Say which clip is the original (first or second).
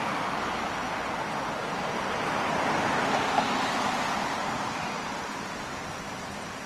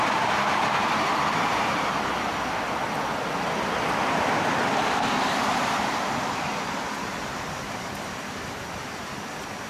first